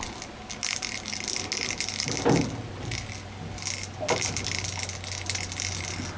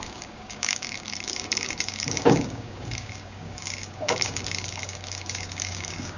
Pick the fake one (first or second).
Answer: second